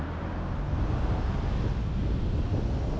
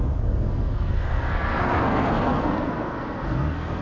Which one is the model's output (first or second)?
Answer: second